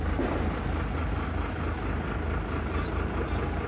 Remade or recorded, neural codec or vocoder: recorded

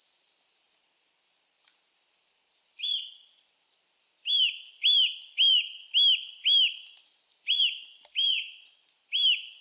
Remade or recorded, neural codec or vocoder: recorded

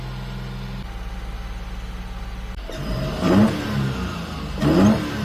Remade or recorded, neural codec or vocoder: recorded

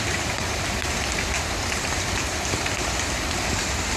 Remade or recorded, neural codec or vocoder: remade, vocoder, BigVGAN v2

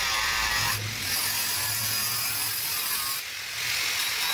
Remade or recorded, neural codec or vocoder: recorded